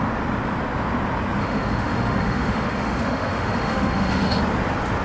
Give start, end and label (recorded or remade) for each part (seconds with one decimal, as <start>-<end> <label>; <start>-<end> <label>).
0.0-1.4 recorded; 1.4-4.4 remade; 4.4-5.0 recorded